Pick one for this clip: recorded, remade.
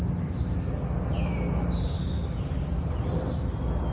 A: recorded